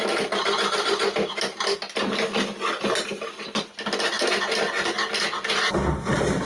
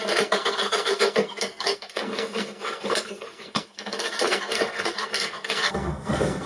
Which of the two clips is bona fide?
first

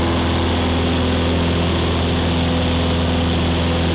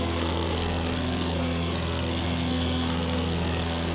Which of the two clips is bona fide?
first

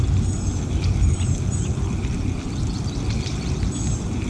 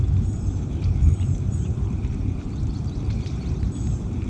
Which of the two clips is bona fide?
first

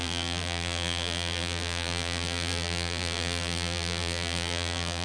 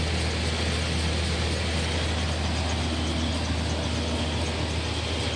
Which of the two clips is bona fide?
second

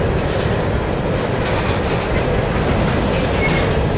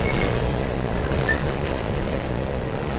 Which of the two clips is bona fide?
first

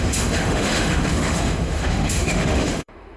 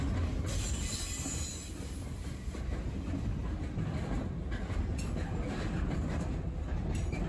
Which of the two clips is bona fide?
second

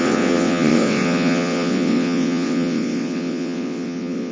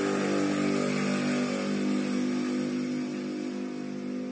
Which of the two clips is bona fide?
second